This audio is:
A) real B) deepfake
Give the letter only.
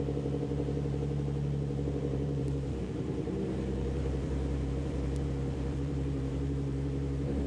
B